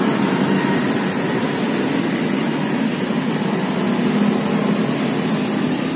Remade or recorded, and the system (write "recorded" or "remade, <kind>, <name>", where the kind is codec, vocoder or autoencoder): recorded